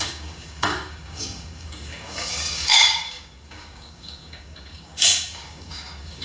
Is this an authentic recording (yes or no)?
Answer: no